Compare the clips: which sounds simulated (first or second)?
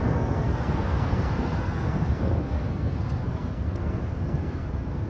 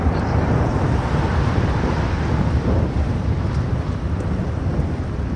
first